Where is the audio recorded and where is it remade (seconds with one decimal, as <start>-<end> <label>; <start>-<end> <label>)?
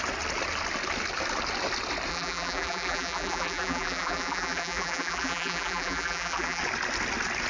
0.0-2.1 recorded; 2.1-6.6 remade; 6.6-7.5 recorded